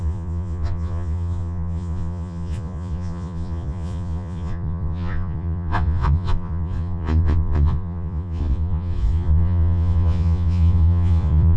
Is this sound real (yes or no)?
no